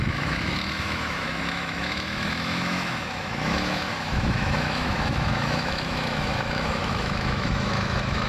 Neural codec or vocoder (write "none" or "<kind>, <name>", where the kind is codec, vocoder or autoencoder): autoencoder, DAC-VAE